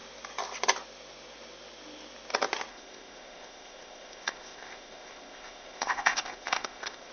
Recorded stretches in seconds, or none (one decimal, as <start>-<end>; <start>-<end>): 0.0-2.7